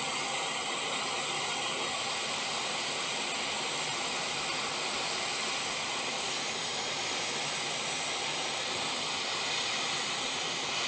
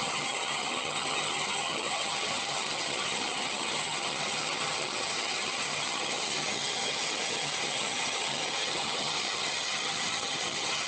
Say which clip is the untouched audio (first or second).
first